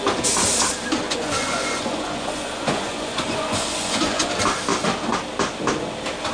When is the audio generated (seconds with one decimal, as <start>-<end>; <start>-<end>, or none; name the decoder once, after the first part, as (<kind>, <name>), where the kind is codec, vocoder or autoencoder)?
1.0-4.3 (vocoder, Vocos)